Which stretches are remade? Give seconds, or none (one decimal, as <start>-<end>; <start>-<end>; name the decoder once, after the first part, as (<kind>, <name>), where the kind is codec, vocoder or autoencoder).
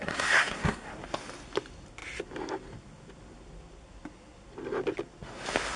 0.0-0.9 (codec, SNAC)